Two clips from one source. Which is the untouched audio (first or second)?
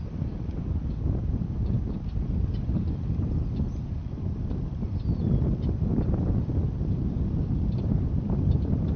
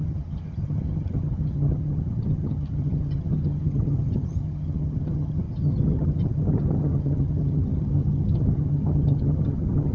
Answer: first